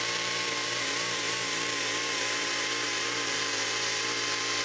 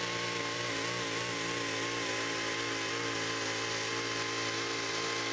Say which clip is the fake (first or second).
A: first